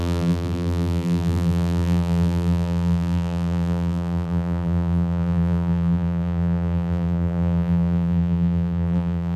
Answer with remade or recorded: remade